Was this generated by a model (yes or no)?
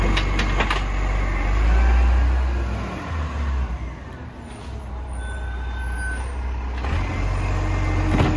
no